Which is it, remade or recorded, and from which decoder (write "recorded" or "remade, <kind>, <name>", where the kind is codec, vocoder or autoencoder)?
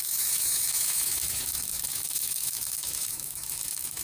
remade, autoencoder, DAC-VAE